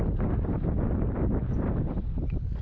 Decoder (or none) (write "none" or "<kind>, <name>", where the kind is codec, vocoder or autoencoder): none